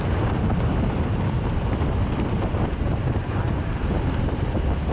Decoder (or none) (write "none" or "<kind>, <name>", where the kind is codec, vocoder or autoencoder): none